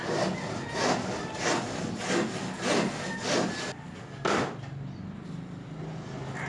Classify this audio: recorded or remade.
recorded